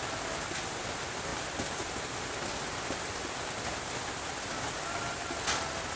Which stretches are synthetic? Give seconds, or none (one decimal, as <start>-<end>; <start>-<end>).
none